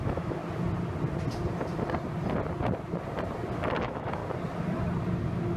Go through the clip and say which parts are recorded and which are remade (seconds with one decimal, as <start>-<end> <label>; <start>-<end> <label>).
0.0-0.4 remade; 0.4-3.8 recorded; 3.8-4.2 remade; 4.2-5.6 recorded